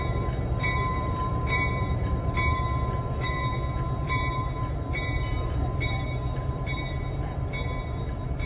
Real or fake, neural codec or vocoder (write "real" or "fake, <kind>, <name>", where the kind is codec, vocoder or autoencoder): fake, vocoder, BigVGAN v2